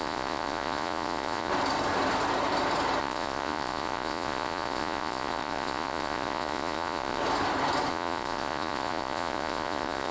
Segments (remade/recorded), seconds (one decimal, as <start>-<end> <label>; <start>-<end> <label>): 0.0-1.5 remade; 1.5-3.0 recorded; 3.0-7.2 remade; 7.2-7.9 recorded; 7.9-10.1 remade